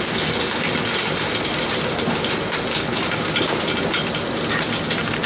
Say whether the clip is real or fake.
real